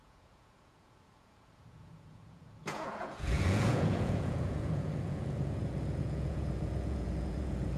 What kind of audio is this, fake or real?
fake